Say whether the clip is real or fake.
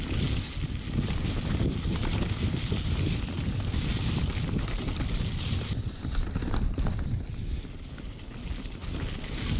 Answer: real